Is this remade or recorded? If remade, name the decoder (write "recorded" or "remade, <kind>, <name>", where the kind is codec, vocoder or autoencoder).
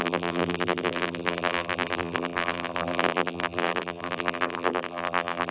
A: remade, vocoder, BigVGAN v2